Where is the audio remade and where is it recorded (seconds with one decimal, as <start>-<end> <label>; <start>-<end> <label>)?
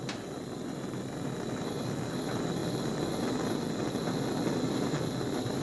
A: 0.0-5.6 recorded